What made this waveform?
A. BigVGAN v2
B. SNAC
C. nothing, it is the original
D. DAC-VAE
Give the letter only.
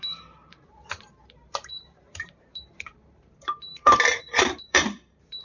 A